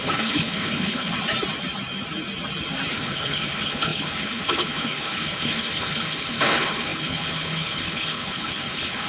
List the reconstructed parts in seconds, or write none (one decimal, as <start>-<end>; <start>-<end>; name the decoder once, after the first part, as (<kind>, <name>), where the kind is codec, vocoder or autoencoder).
0.0-1.1 (codec, HILCodec); 2.9-9.1